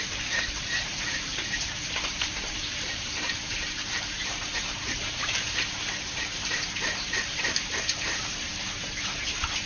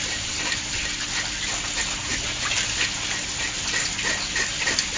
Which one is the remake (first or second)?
first